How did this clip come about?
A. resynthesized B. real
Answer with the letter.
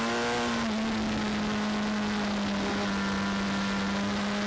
B